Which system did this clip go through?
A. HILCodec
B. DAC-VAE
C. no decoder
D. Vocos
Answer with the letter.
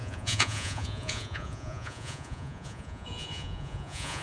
D